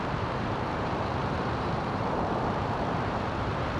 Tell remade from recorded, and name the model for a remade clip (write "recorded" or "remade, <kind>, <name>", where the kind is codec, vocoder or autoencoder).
remade, vocoder, BigVGAN v2